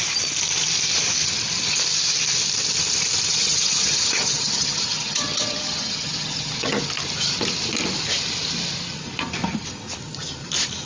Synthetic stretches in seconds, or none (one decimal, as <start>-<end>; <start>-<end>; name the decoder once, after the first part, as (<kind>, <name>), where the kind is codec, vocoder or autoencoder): 3.3-6.8 (vocoder, HiFi-GAN)